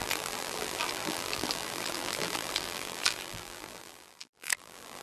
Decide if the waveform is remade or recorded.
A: remade